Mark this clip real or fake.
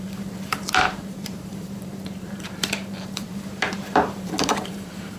fake